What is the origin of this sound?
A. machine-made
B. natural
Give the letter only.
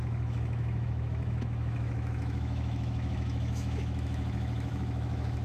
A